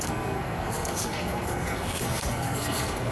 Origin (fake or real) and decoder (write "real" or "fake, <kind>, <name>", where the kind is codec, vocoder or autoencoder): fake, codec, SNAC